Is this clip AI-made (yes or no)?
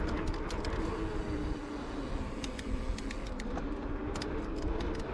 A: no